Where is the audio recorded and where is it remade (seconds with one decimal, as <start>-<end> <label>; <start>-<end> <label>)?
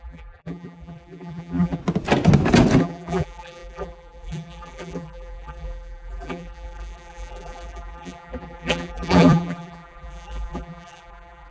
0.0-1.8 remade; 1.8-2.8 recorded; 2.8-11.5 remade